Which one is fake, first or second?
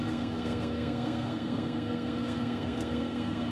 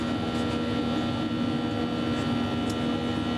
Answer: first